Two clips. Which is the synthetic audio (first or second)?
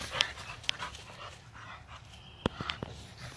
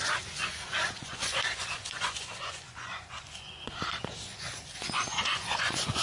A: second